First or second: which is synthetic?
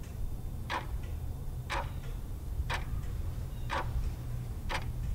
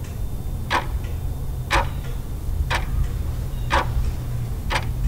first